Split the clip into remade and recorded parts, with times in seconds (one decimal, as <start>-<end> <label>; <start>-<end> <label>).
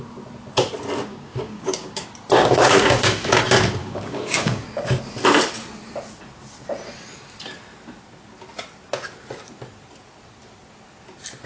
0.0-1.1 recorded; 1.1-3.4 remade; 3.4-3.8 recorded; 3.8-5.0 remade; 5.0-11.5 recorded